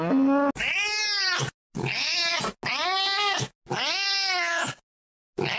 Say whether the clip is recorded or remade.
recorded